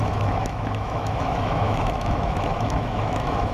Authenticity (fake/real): fake